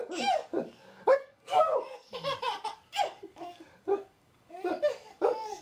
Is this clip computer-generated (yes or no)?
yes